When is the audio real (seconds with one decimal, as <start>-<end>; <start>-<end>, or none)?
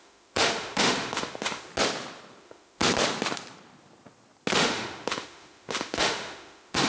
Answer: 1.7-2.4; 2.9-4.5